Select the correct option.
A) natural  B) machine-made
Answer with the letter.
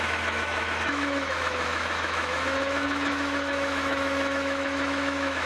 B